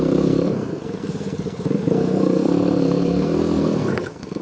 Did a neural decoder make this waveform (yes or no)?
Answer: yes